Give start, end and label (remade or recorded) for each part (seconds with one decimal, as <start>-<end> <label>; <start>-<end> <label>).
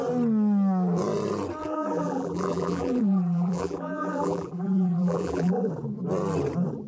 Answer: 0.0-1.6 recorded; 1.6-5.7 remade; 5.7-6.9 recorded